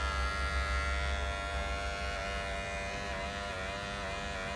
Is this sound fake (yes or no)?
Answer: no